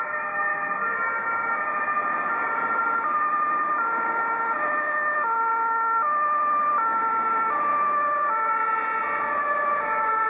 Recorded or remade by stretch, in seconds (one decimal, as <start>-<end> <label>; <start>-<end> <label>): 0.0-10.3 recorded